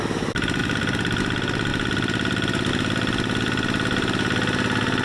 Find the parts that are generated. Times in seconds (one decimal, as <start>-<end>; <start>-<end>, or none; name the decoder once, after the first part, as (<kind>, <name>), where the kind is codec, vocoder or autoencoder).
0.6-1.2 (vocoder, BigVGAN v2)